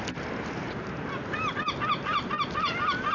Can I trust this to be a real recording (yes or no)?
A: yes